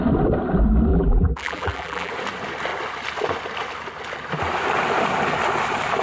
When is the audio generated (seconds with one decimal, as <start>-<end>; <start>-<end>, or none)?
0.9-2.1